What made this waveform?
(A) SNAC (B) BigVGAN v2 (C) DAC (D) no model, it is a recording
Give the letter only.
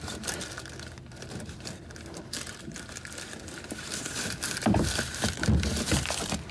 B